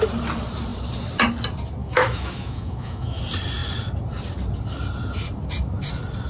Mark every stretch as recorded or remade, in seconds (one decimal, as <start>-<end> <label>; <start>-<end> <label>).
0.0-1.8 recorded; 1.8-3.2 remade; 3.2-6.3 recorded